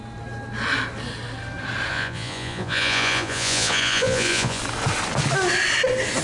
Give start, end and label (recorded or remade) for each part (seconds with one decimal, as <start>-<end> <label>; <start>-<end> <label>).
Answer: 0.0-1.9 recorded; 1.9-4.6 remade; 4.6-6.2 recorded